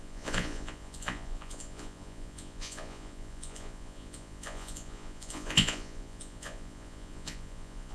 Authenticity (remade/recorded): remade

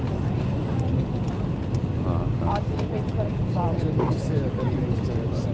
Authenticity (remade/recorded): recorded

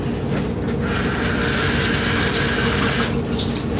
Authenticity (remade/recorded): recorded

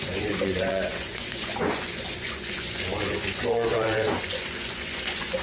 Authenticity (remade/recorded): remade